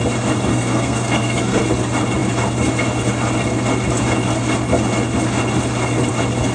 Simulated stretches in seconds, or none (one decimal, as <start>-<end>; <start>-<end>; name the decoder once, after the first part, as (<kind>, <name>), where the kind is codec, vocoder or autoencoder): 0.5-1.6 (codec, SNAC)